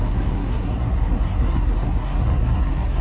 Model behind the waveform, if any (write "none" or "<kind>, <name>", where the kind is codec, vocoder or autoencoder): codec, SNAC